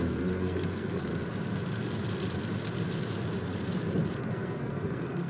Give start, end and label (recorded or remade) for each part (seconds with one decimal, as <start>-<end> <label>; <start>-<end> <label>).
0.0-1.1 remade; 1.1-4.2 recorded; 4.2-5.3 remade